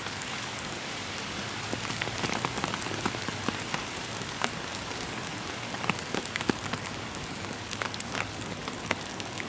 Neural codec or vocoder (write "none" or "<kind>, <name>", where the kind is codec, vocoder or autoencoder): codec, DAC